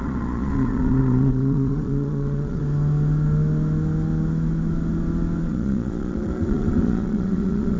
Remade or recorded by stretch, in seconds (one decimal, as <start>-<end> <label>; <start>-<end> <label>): 0.0-2.6 remade; 2.6-5.4 recorded; 5.4-7.8 remade